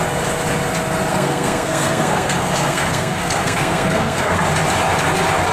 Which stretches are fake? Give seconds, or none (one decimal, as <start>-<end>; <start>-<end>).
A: 1.1-4.4